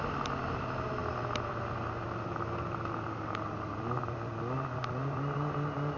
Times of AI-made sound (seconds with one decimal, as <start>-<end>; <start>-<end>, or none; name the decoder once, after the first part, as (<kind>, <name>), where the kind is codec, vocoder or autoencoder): none